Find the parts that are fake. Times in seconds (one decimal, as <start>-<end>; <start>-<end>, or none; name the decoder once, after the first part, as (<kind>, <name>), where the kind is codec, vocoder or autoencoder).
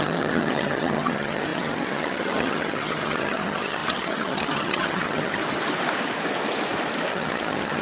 0.0-5.4 (vocoder, HiFi-GAN); 7.1-7.8